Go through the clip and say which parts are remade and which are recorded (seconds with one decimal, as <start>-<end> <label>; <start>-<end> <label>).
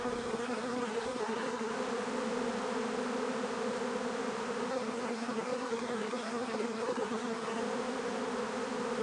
0.0-1.7 remade; 1.7-4.7 recorded; 4.7-7.6 remade; 7.6-9.0 recorded